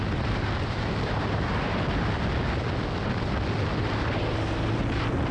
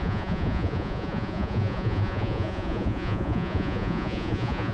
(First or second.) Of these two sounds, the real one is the first